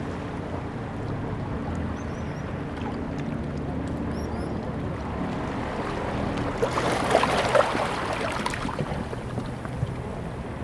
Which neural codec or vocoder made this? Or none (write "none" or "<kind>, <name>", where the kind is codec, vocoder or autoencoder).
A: none